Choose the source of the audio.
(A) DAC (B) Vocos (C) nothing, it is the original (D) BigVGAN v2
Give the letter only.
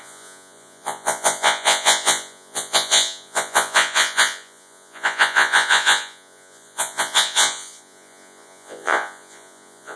B